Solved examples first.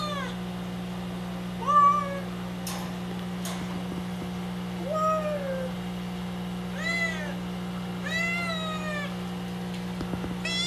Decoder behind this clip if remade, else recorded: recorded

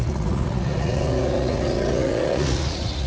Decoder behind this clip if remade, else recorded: remade, vocoder, Vocos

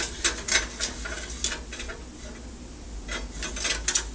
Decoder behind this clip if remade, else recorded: recorded